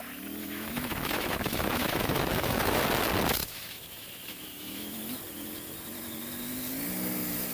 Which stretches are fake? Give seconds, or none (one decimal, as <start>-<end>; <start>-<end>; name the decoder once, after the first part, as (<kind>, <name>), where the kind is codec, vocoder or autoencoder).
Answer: 0.4-2.8 (autoencoder, DAC-VAE); 3.4-5.0